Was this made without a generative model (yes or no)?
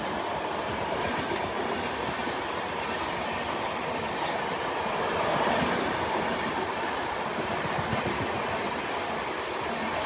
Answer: yes